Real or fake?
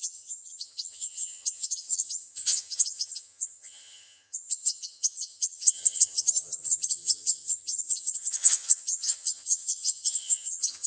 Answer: fake